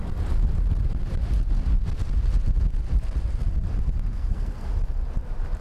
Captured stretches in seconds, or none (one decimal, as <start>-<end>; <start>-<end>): 0.0-4.1; 4.7-5.6